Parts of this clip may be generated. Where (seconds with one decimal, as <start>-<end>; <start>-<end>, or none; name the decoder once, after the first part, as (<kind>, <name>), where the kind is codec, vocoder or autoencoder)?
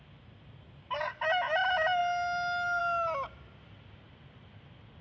none